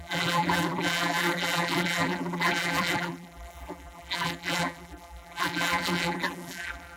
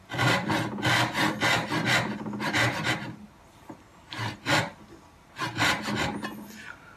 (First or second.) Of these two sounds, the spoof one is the first